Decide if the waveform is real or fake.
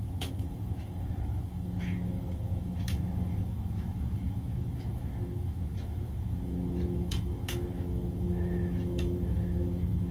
fake